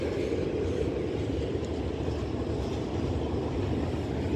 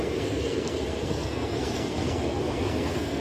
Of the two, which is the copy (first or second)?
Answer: second